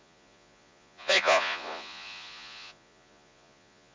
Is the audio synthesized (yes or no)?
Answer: yes